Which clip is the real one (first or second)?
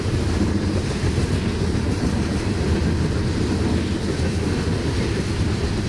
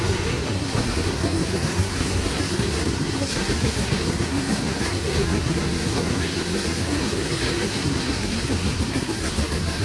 first